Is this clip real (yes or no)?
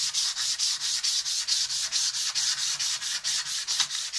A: yes